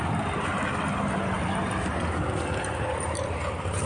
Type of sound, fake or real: real